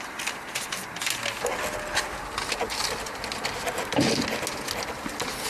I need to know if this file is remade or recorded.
recorded